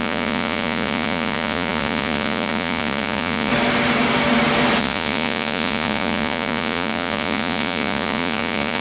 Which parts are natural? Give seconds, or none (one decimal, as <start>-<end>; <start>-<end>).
3.5-4.8